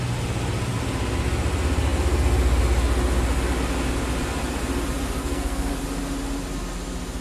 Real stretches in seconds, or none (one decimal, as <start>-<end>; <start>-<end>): 0.0-5.2; 5.7-7.2